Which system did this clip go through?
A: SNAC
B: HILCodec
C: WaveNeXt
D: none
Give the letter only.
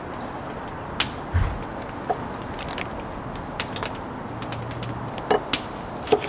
D